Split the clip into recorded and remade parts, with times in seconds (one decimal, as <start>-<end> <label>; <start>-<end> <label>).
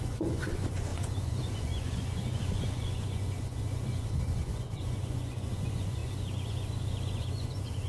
0.0-7.9 remade